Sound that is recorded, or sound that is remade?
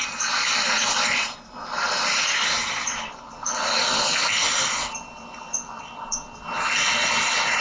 recorded